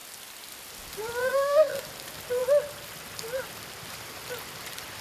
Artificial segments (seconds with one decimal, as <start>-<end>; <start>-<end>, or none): 1.2-1.8